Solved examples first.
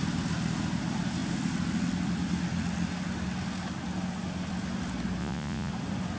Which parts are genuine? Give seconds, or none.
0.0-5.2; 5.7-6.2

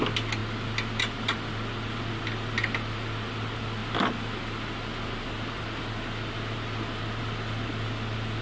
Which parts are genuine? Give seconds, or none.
0.0-8.4

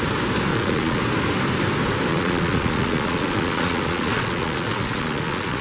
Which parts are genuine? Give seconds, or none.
0.0-0.5; 1.0-2.1

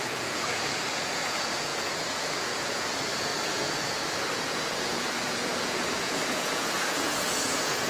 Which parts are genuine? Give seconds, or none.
none

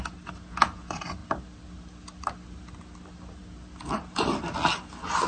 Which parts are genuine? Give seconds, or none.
0.0-5.3

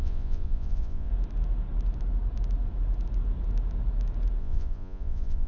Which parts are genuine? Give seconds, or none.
1.1-4.4

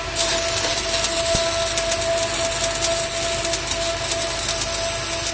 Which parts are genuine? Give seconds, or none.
0.0-5.3